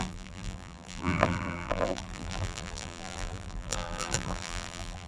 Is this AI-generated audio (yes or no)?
yes